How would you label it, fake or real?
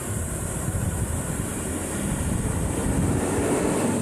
fake